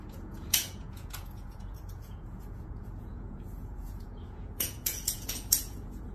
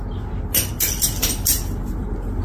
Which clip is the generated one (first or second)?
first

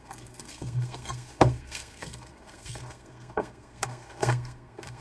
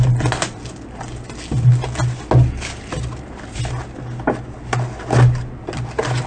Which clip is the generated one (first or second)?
first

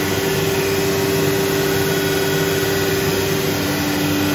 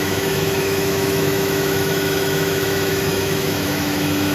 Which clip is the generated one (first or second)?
second